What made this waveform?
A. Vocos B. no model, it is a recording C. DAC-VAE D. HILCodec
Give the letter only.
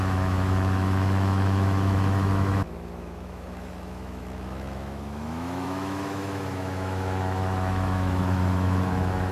C